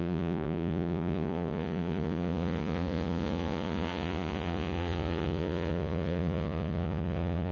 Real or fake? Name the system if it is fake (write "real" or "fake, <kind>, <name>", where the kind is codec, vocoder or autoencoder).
fake, vocoder, Vocos